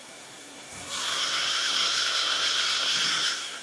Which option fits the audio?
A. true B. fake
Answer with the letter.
B